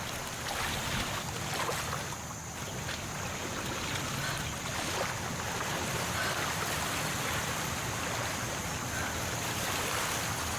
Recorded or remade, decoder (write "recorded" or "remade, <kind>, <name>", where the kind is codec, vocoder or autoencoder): recorded